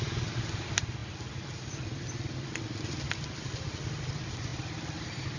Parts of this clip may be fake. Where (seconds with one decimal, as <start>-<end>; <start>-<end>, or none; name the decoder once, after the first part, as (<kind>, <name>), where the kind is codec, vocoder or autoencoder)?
0.0-5.4 (vocoder, BigVGAN v2)